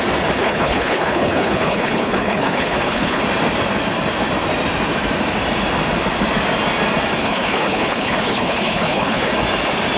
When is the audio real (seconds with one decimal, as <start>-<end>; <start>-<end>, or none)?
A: 0.0-0.4; 3.2-7.2; 9.3-10.0